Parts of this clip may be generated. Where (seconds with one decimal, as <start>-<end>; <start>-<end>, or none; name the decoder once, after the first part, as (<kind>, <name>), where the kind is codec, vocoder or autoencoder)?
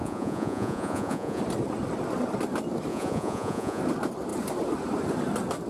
0.0-1.4 (vocoder, Vocos); 2.9-3.8